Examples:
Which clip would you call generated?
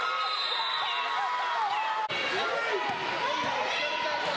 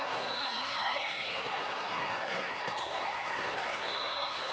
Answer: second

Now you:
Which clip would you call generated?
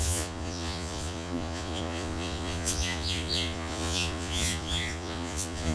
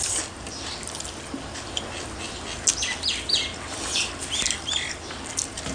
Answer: first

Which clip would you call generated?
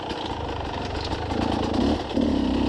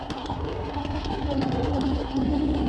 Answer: second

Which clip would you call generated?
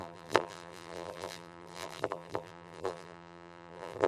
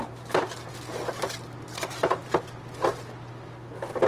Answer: first